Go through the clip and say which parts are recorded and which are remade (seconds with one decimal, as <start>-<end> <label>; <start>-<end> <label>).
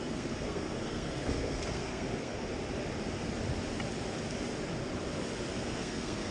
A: 0.0-2.5 remade; 2.5-5.5 recorded; 5.5-6.3 remade